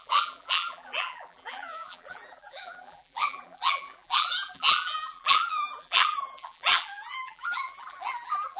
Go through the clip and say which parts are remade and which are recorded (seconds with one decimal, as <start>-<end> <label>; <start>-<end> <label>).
0.0-8.6 remade